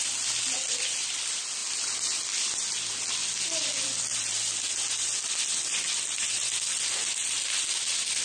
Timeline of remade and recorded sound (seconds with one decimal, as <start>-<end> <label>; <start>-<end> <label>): 0.0-8.2 recorded